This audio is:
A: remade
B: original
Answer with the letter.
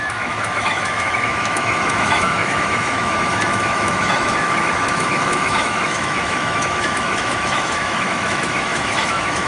A